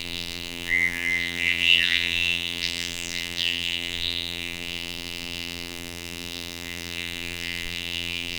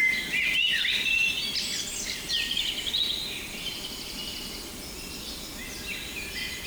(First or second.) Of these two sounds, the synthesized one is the first